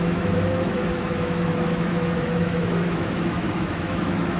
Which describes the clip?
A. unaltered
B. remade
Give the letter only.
B